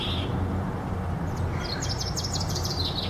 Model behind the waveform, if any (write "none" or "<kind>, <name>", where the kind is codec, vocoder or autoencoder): none